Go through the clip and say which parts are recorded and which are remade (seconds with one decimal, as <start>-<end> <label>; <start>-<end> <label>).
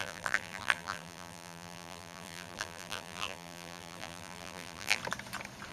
0.0-5.0 remade; 5.0-5.7 recorded